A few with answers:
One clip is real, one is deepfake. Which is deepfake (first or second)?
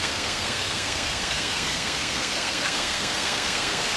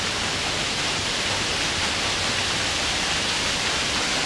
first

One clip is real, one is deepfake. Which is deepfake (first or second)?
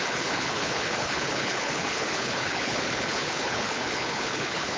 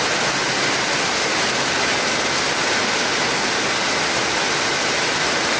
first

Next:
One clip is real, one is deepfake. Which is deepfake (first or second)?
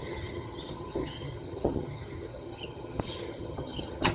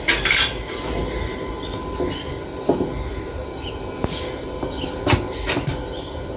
first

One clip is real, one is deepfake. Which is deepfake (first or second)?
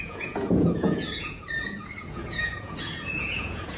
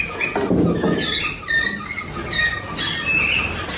first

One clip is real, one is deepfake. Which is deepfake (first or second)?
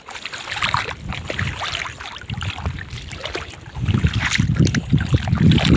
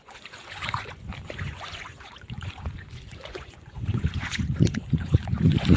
second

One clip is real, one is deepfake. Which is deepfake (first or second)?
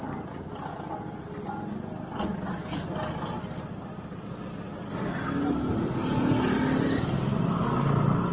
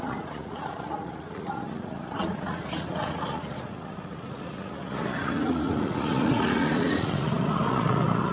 second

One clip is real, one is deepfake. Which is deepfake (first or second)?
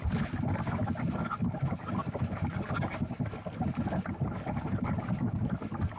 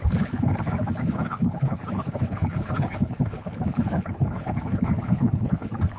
second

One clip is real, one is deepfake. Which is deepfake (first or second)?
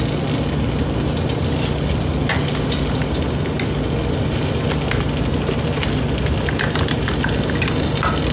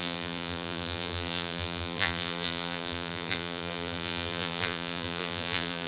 second